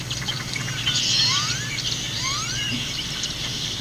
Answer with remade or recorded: recorded